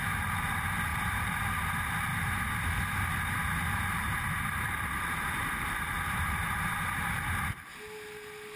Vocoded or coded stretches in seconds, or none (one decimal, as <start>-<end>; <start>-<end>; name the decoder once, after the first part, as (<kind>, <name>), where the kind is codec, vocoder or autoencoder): 0.9-1.4 (vocoder, BigVGAN v2); 2.1-7.3